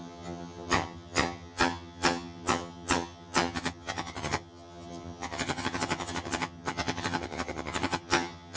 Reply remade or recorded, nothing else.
remade